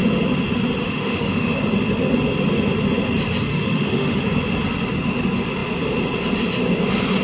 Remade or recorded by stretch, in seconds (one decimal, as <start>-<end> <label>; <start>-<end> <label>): 0.0-0.8 recorded; 0.8-1.6 remade; 1.6-3.5 recorded; 3.5-4.2 remade; 4.2-7.2 recorded